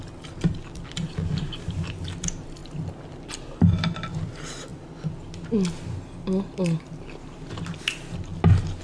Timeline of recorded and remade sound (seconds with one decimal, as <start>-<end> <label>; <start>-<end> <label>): 0.0-8.8 recorded